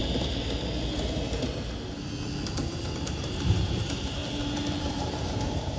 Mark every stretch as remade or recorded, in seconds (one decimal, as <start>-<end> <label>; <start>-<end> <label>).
0.0-2.6 recorded; 2.6-4.2 remade; 4.2-4.8 recorded; 4.8-5.8 remade